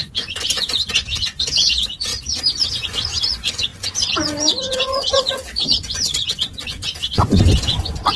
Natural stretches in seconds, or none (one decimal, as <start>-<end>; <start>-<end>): 2.1-2.7